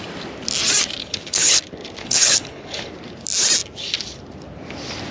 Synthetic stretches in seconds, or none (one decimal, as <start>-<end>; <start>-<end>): 1.0-1.6; 2.0-2.9